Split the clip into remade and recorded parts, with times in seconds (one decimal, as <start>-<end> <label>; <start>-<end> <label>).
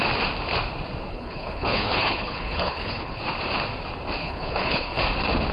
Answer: 0.0-1.1 recorded; 1.1-3.2 remade; 3.2-4.2 recorded; 4.2-5.0 remade; 5.0-5.5 recorded